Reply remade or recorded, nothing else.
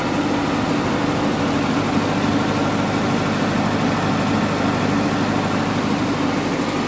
recorded